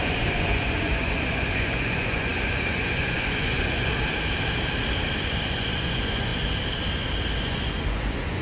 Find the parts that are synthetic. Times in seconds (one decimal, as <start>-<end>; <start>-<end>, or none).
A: 0.0-3.9; 5.2-6.3; 7.4-8.4